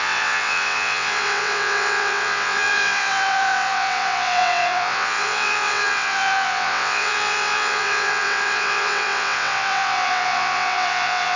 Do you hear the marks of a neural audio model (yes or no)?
yes